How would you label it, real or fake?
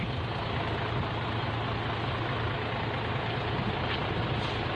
real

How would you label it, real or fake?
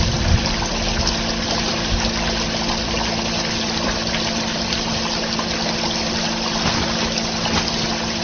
real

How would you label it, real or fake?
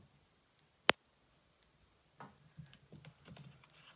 real